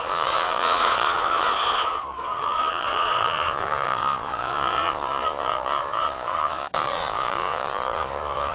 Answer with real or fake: fake